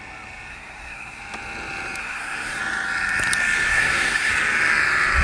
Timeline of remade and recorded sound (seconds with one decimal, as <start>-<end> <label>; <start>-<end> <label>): 0.0-0.5 recorded; 0.5-1.2 remade; 1.2-2.0 recorded; 2.0-2.6 remade; 2.6-3.7 recorded; 3.7-4.3 remade; 4.3-5.2 recorded